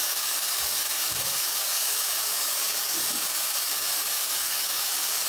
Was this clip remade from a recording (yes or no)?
yes